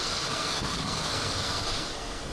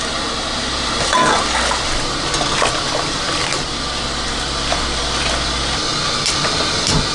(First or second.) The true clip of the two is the second